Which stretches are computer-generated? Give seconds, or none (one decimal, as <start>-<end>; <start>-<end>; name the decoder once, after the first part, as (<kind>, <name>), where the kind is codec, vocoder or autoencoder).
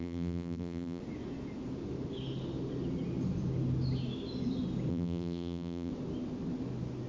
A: 0.0-1.0 (vocoder, BigVGAN v2); 4.9-5.9